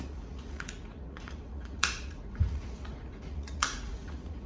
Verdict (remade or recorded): remade